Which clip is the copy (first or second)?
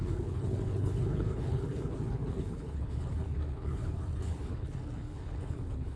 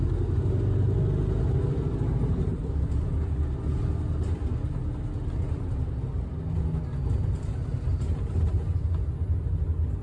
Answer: first